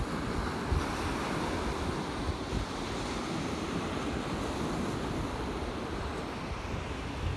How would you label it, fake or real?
real